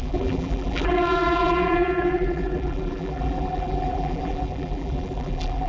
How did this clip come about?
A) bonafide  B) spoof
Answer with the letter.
B